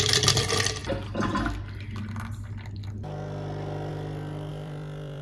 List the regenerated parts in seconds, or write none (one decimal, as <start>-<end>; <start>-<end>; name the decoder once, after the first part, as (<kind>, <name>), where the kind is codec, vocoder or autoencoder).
4.5-5.2 (vocoder, BigVGAN v2)